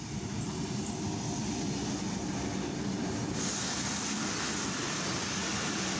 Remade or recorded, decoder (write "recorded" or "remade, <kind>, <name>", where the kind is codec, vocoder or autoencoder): recorded